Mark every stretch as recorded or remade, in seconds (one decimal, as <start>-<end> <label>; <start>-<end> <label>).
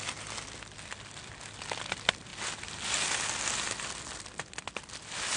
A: 0.0-5.4 recorded